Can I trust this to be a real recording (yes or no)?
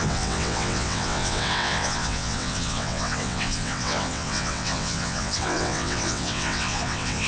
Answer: no